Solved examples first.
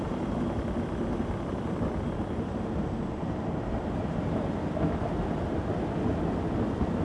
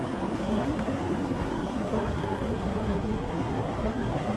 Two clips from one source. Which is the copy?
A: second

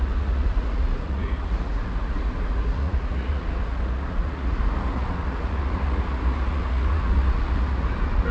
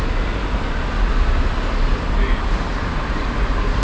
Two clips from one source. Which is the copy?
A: first